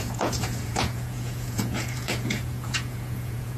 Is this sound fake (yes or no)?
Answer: yes